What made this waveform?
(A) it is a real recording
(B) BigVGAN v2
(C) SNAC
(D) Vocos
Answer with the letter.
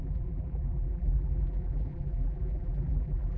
B